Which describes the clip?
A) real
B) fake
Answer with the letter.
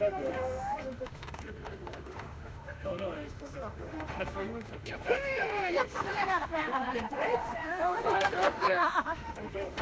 B